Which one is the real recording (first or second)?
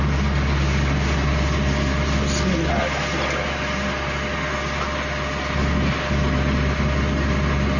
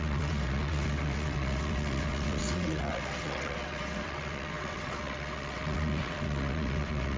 first